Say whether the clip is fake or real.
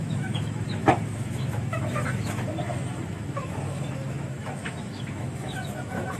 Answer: fake